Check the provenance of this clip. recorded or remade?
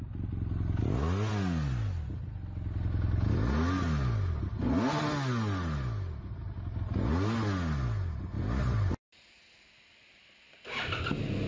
recorded